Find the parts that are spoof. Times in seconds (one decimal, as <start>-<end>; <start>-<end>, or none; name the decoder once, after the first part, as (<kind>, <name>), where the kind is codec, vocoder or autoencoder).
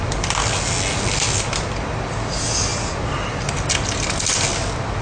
none